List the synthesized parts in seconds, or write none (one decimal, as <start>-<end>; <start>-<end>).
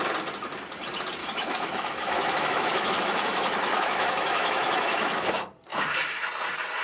1.2-5.3